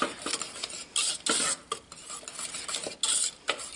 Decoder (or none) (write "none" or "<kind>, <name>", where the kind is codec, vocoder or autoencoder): none